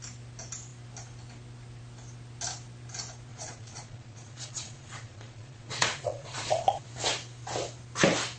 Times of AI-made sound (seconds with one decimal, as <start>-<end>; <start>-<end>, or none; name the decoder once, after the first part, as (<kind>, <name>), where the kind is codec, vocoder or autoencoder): 3.3-6.9 (vocoder, Vocos)